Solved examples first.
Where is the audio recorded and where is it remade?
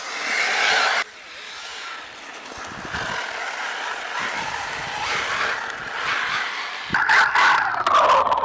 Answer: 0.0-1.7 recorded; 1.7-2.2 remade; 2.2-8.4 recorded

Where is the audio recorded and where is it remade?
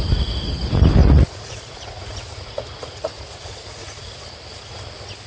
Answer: 0.0-1.0 recorded; 1.0-4.2 remade; 4.2-5.3 recorded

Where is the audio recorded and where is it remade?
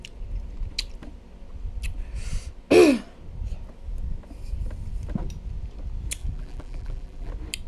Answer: 0.0-6.2 recorded; 6.2-7.3 remade; 7.3-7.7 recorded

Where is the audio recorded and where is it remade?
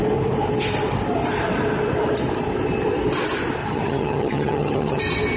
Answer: 0.0-3.6 recorded; 3.6-5.0 remade; 5.0-5.4 recorded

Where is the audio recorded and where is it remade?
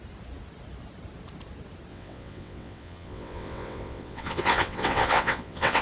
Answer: 0.0-1.9 recorded; 1.9-5.8 remade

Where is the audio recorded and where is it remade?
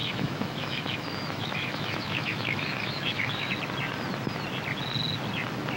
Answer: 0.0-3.5 remade; 3.5-5.8 recorded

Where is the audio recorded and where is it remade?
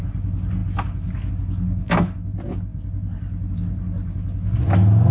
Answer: 0.0-5.1 recorded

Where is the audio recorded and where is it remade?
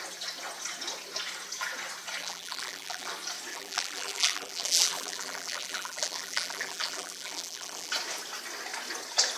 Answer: 0.0-2.2 recorded; 2.2-3.1 remade; 3.1-3.5 recorded; 3.5-7.9 remade; 7.9-9.4 recorded